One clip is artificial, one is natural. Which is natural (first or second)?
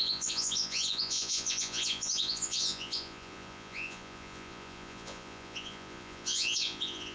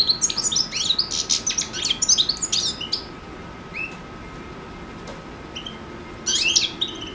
second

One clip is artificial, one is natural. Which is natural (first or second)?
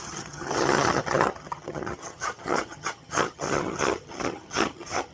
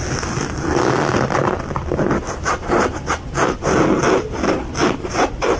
second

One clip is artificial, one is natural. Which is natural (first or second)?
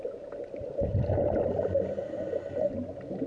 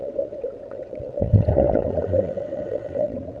first